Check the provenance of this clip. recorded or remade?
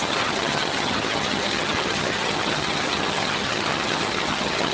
remade